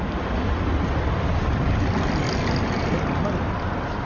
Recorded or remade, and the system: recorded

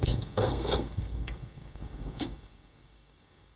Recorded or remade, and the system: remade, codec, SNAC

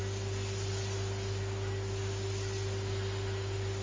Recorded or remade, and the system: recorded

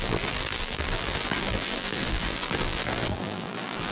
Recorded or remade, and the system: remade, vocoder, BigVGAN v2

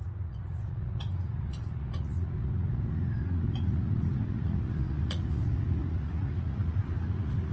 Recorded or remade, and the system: remade, vocoder, Vocos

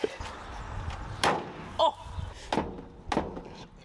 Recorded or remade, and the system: recorded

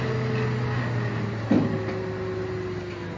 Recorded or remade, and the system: recorded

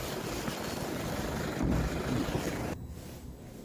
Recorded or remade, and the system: recorded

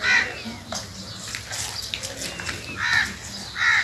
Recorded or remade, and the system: recorded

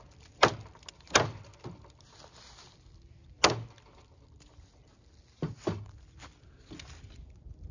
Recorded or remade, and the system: recorded